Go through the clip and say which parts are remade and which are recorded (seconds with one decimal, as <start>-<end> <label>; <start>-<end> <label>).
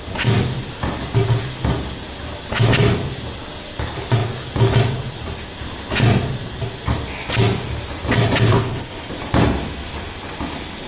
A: 0.0-8.5 recorded; 8.5-9.1 remade; 9.1-10.9 recorded